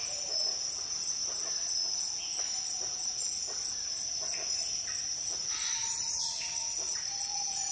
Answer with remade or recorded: remade